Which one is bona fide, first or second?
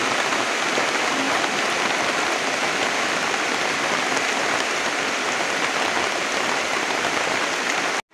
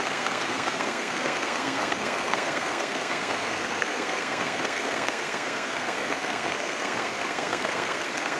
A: first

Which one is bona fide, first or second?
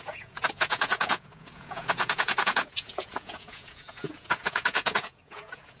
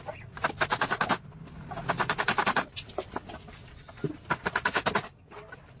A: second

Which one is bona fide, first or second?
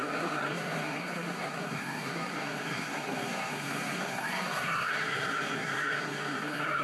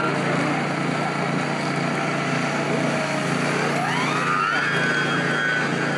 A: second